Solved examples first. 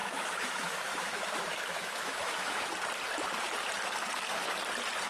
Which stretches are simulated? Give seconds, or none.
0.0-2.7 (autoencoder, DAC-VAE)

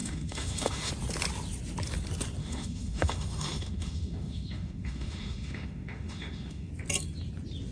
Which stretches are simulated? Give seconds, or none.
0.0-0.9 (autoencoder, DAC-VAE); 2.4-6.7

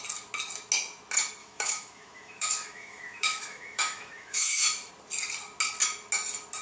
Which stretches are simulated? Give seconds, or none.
1.4-4.9 (autoencoder, DAC-VAE)

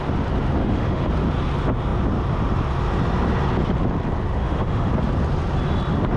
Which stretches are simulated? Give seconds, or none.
0.6-1.1 (autoencoder, DAC-VAE); 4.4-4.9